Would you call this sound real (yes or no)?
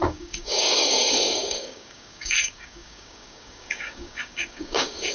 no